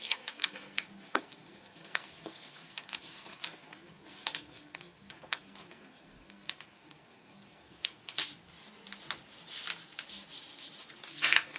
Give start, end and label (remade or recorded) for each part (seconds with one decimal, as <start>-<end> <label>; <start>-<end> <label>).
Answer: 0.0-8.2 remade; 8.2-11.1 recorded; 11.1-11.6 remade